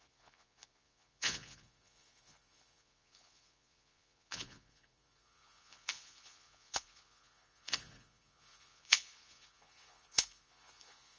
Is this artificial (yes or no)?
yes